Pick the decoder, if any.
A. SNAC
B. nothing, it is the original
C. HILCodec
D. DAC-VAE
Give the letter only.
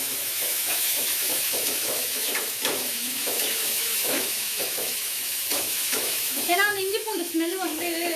D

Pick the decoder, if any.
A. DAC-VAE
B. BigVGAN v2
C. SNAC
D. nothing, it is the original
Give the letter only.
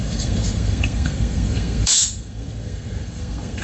C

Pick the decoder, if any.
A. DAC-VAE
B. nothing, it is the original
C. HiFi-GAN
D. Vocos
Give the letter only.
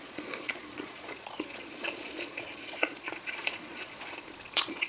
D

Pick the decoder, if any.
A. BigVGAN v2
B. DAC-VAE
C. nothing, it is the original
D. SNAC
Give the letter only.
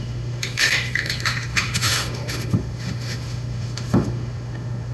B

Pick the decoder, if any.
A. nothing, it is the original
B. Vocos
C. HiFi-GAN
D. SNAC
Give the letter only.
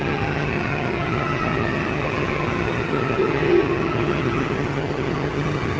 C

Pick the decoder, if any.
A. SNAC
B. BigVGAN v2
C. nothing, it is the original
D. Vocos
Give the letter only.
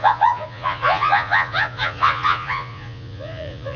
D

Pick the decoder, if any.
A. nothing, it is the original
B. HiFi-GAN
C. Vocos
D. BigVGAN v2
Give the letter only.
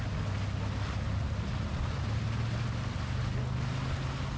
A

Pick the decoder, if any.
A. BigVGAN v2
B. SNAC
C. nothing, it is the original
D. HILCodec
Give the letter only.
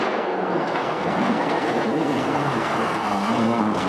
B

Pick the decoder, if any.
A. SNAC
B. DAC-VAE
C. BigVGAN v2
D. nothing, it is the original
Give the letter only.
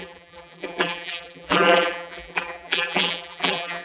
C